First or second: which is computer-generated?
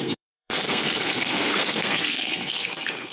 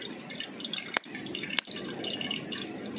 first